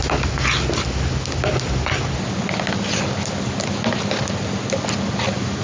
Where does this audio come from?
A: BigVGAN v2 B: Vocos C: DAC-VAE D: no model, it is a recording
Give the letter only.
D